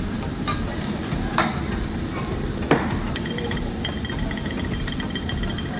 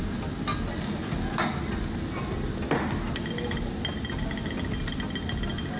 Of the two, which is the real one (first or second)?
second